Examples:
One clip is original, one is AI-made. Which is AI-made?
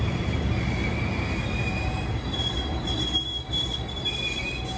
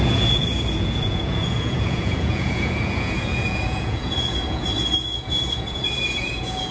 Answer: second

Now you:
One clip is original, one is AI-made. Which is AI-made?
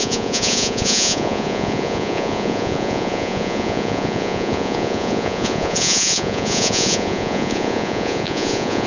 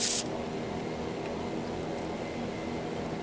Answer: first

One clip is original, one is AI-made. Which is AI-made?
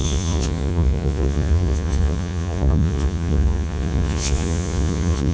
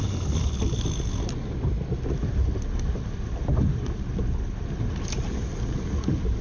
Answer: first